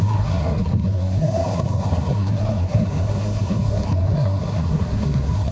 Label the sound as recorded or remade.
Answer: remade